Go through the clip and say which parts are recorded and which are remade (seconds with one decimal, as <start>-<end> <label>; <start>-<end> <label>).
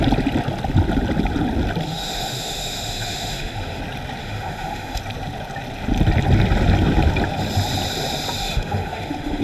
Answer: 0.0-1.9 recorded; 1.9-3.8 remade; 3.8-4.2 recorded; 4.2-5.0 remade; 5.0-8.4 recorded; 8.4-9.4 remade